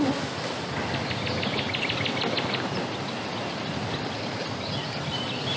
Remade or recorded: recorded